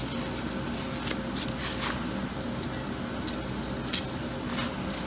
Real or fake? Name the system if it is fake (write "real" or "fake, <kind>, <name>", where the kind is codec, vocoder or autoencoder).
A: real